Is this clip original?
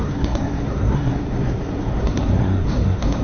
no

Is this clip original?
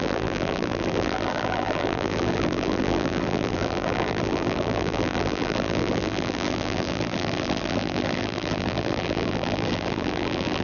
no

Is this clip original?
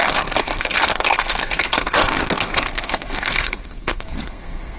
no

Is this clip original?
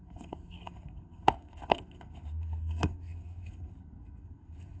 no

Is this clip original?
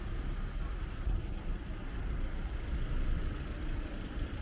yes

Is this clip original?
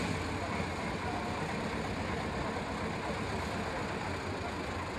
yes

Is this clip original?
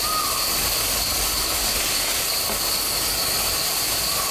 yes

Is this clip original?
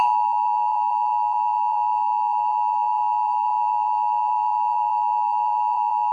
no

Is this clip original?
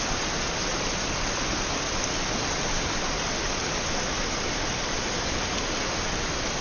yes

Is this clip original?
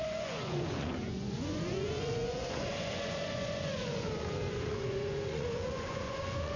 no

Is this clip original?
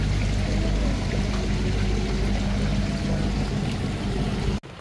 yes